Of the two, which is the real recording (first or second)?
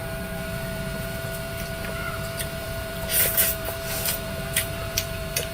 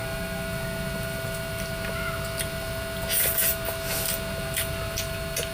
second